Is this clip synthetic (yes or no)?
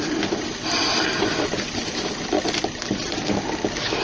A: no